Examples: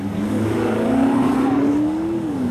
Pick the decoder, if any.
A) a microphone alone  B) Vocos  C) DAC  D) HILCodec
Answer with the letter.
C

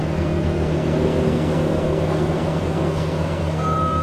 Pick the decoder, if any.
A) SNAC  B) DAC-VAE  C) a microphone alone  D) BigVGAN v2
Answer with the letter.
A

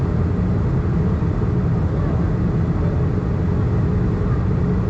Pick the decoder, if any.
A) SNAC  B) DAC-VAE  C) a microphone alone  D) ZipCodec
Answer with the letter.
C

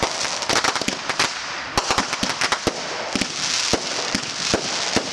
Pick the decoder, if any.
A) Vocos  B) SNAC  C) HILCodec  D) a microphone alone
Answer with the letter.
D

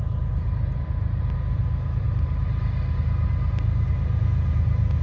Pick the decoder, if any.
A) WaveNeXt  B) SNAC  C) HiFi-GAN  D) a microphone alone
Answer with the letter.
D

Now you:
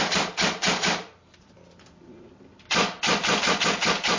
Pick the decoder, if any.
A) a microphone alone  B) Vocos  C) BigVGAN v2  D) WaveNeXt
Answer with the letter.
C